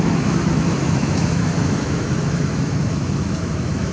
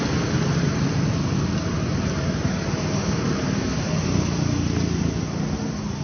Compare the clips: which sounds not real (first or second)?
first